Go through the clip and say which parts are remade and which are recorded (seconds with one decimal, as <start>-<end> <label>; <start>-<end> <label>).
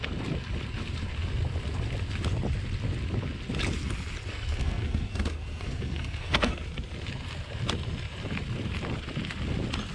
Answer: 0.0-4.3 recorded; 4.3-6.6 remade; 6.6-9.9 recorded